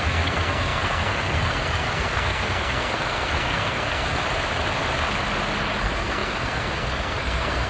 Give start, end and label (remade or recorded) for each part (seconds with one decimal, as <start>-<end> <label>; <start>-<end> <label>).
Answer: 0.0-4.2 remade; 4.2-5.8 recorded; 5.8-7.7 remade